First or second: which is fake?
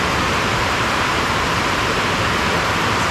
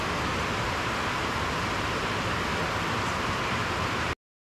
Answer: first